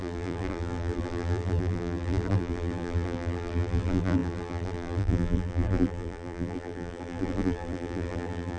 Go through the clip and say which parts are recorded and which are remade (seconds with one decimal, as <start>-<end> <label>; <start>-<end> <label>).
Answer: 0.0-8.6 remade